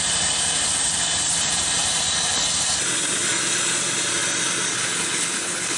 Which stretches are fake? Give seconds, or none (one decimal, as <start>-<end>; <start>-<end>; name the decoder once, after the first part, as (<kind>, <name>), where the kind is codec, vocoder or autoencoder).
4.7-5.8 (codec, HILCodec)